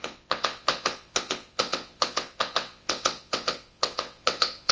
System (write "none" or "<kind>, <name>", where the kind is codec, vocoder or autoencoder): vocoder, WaveNeXt